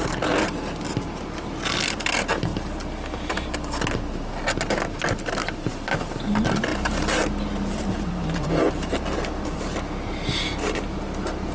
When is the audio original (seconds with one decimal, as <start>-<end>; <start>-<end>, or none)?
0.0-11.5